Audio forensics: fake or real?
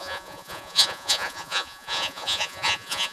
fake